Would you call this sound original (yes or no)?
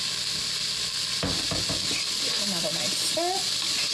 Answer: yes